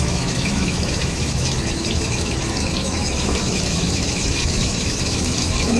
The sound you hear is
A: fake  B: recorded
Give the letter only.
A